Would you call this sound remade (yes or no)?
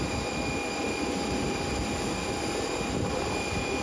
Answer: no